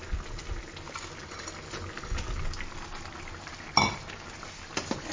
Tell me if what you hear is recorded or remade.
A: recorded